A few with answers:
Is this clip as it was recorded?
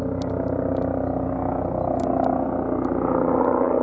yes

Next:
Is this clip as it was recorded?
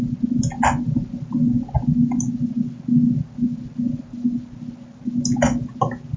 yes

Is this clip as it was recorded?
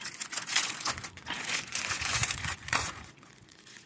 no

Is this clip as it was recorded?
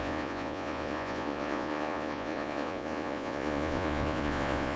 no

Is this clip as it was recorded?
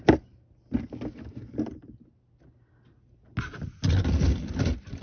yes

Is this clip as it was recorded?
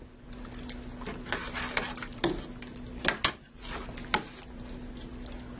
yes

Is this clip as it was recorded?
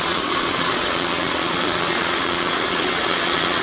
no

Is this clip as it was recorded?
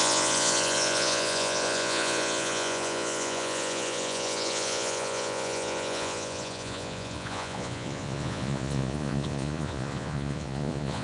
no